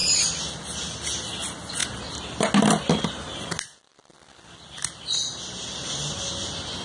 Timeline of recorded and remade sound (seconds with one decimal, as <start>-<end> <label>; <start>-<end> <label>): 0.0-6.8 recorded